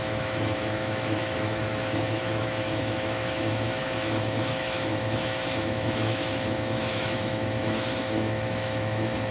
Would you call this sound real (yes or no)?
no